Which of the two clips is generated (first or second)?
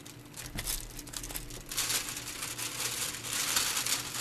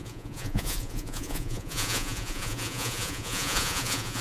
second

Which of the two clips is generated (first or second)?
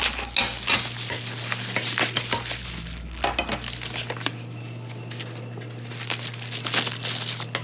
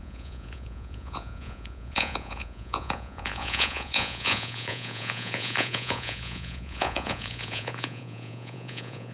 second